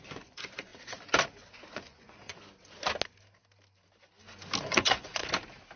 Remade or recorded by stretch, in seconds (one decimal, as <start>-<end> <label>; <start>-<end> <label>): 0.0-0.7 remade; 0.7-1.7 recorded; 1.7-2.3 remade; 2.3-4.6 recorded; 4.6-5.2 remade; 5.2-5.8 recorded